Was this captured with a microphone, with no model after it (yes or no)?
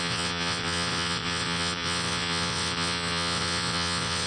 no